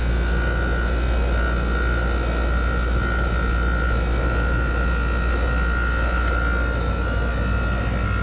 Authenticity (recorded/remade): recorded